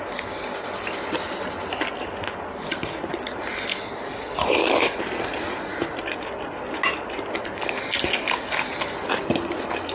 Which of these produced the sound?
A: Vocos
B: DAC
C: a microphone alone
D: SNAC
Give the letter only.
C